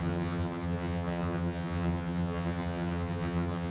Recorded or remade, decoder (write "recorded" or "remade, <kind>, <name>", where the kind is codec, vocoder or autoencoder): remade, vocoder, HiFi-GAN